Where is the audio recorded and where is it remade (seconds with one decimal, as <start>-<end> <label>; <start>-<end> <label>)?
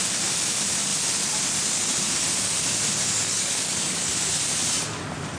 0.0-3.3 recorded; 3.3-4.1 remade; 4.1-5.4 recorded